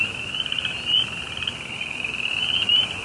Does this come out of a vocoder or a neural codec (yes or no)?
no